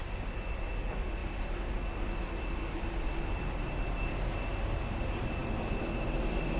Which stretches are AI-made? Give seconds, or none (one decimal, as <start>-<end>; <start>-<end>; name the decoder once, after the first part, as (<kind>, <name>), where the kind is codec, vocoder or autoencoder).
none